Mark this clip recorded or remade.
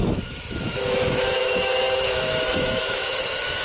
remade